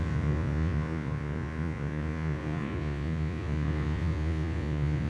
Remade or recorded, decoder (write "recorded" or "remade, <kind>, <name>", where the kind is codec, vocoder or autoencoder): remade, vocoder, Vocos